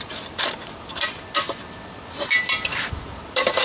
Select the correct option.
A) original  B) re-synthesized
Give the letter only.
A